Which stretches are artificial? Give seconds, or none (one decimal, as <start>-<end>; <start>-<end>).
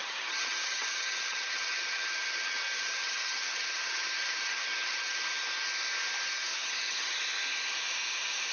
0.0-5.1; 6.5-7.2